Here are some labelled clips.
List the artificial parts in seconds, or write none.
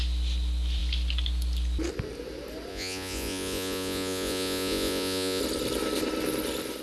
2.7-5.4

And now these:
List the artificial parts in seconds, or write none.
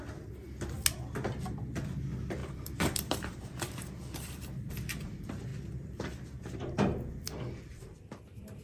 2.4-4.7; 5.5-8.6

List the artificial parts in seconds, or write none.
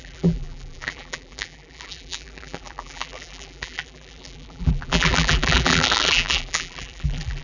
0.0-7.4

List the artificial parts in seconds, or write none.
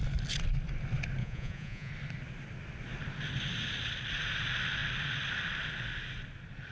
1.2-1.9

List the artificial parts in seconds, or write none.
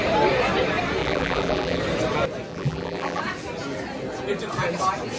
1.0-1.8; 2.5-3.2